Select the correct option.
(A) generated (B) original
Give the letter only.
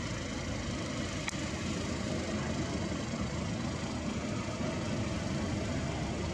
B